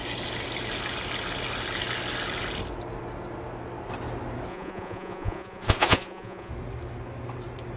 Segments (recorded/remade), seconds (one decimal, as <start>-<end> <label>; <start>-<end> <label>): 0.0-4.5 recorded; 4.5-6.5 remade; 6.5-7.8 recorded